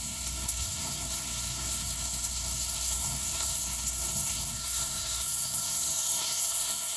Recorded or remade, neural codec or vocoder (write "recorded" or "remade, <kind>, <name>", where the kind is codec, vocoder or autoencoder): remade, codec, SNAC